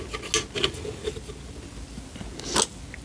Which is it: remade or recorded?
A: recorded